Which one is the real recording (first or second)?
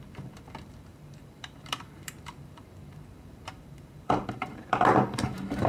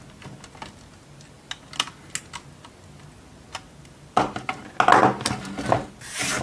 second